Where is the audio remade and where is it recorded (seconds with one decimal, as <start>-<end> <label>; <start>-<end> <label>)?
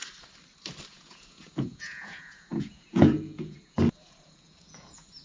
0.0-0.9 recorded; 0.9-5.2 remade